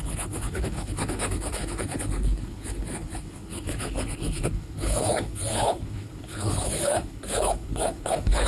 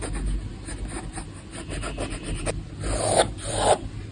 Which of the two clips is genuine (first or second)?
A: second